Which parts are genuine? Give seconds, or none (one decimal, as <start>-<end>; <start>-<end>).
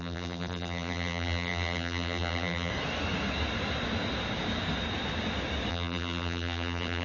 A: 2.7-5.7